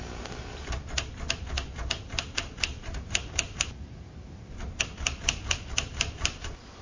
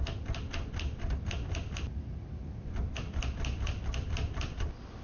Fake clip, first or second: first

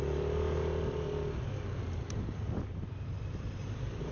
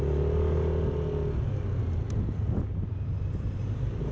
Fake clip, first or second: first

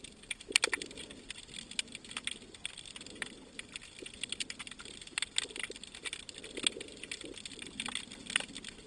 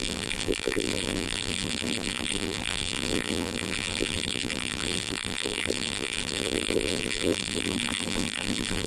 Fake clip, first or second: second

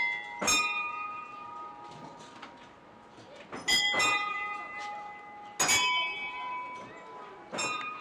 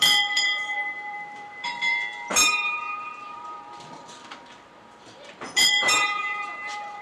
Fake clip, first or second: second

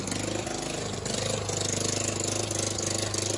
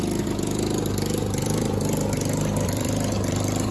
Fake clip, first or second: second